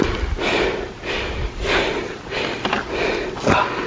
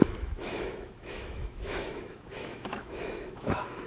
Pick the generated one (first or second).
second